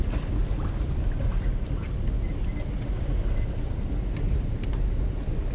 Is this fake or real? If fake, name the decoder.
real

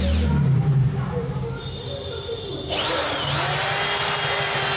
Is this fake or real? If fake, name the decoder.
real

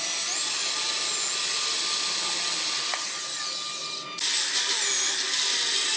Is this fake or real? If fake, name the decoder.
real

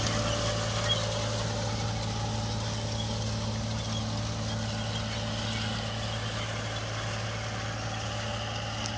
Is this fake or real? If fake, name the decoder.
real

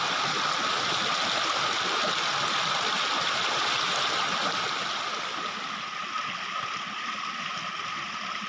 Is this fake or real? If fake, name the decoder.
real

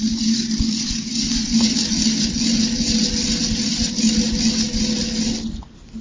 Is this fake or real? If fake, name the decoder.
real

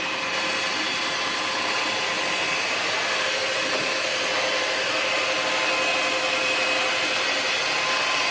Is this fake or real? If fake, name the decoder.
real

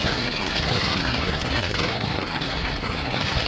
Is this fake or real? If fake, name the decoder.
fake, codec, SNAC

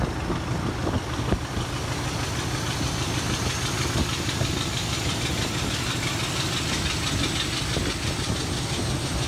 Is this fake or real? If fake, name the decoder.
real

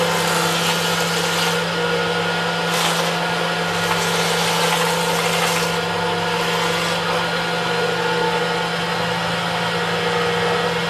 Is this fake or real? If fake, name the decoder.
real